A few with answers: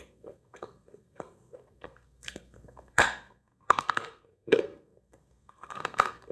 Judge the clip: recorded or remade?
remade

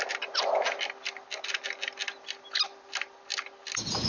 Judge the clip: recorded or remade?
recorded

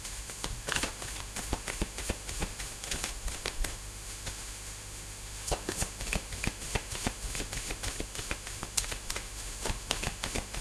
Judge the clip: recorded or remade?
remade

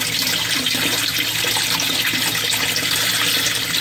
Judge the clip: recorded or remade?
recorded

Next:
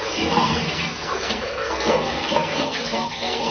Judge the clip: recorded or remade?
remade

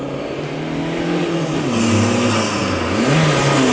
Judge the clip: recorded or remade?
recorded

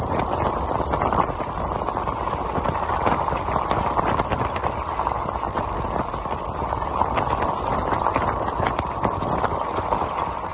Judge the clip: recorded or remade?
recorded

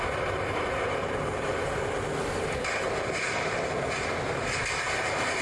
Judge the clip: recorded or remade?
recorded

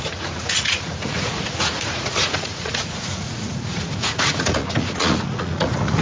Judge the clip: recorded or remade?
remade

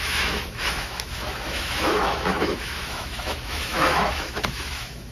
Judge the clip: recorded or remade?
remade